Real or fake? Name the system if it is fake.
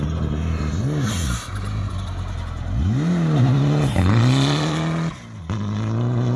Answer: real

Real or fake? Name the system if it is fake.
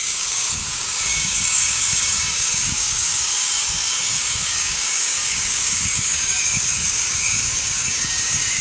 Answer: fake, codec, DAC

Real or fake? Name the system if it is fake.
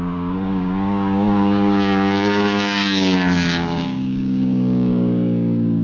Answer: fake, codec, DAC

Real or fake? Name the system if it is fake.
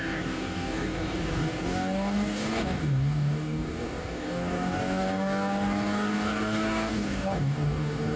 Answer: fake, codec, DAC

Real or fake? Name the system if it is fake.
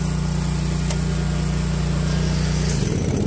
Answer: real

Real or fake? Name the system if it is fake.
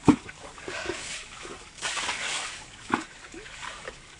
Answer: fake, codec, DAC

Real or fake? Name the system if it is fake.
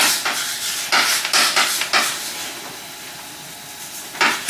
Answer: real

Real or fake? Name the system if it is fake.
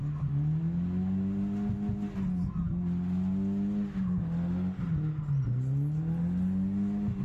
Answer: real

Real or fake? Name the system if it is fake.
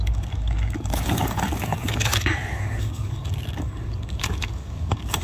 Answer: fake, codec, DAC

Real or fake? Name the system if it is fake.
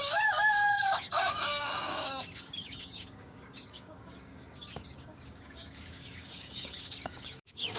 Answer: fake, codec, DAC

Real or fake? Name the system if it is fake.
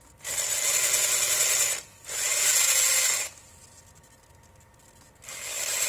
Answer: real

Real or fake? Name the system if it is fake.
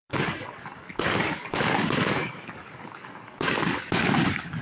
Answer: fake, codec, DAC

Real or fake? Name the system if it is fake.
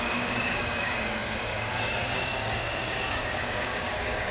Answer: fake, codec, DAC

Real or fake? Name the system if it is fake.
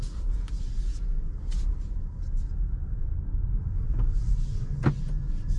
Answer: real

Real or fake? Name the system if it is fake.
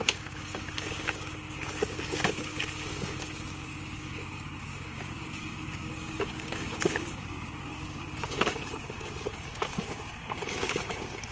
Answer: fake, codec, DAC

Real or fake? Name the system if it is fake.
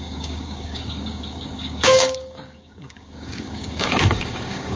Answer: fake, codec, DAC